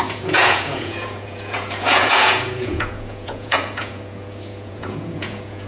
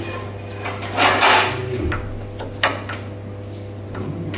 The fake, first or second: first